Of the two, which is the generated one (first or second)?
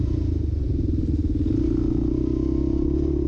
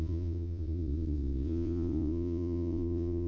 second